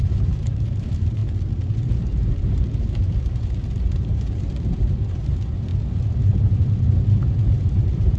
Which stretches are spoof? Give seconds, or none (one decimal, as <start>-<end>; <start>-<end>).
0.0-1.2; 2.4-5.7; 7.5-8.2